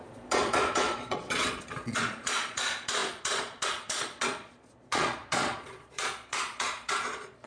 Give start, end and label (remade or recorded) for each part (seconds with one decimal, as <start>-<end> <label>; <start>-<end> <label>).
0.0-7.5 remade